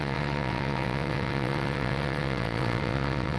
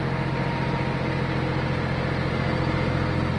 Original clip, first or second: second